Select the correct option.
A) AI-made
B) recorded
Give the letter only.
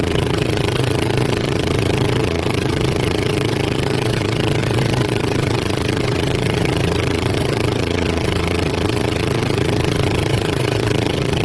A